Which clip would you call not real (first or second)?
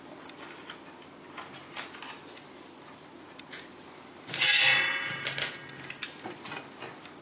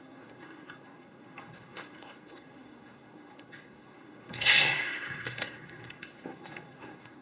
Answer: second